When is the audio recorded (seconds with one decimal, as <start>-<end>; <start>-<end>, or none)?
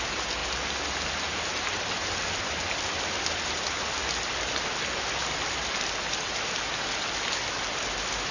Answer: 0.0-8.3